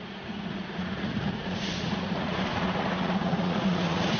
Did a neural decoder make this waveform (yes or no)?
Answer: yes